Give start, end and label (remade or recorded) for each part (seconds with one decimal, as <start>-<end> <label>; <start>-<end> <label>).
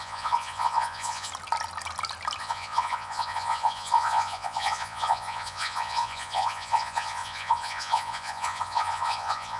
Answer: 0.0-1.3 remade; 1.3-2.4 recorded; 2.4-9.6 remade